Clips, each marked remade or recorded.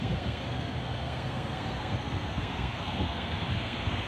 remade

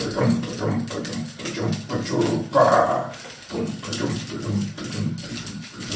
recorded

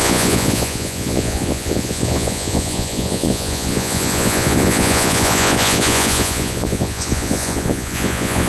remade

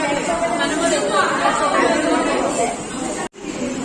recorded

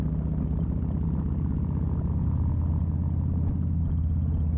recorded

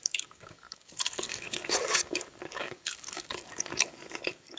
remade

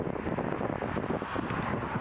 recorded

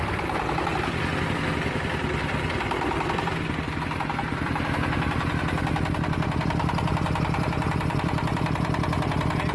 remade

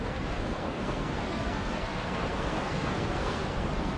remade